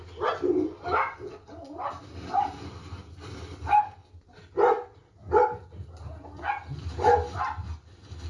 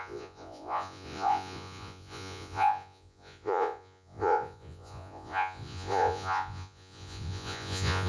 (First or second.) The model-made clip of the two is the second